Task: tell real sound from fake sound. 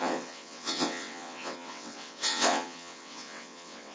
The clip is fake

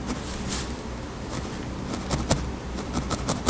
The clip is real